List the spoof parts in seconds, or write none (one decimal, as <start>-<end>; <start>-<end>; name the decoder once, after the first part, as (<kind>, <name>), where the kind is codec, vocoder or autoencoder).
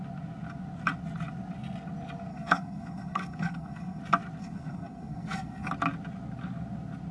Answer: 2.3-4.0 (codec, SNAC); 4.4-5.7